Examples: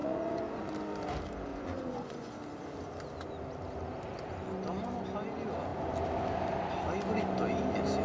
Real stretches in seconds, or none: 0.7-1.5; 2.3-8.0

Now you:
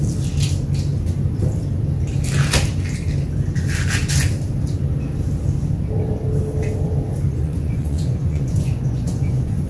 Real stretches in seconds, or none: 0.0-7.3

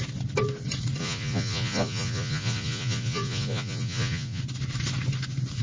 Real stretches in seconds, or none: 0.0-1.0; 4.4-5.6

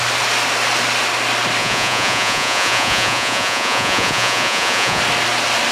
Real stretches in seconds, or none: 0.0-1.6; 5.0-5.7